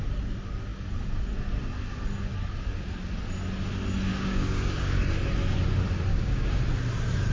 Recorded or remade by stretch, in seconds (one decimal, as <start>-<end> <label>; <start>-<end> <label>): 0.0-4.1 recorded; 4.1-5.0 remade; 5.0-6.1 recorded; 6.1-6.6 remade; 6.6-7.3 recorded